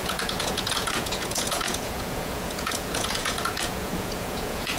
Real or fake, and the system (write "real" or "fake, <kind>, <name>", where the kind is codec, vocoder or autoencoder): fake, vocoder, Vocos